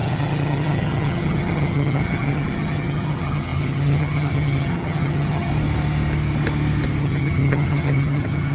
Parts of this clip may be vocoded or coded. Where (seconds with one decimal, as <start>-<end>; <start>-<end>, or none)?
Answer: 0.0-5.5; 7.0-8.5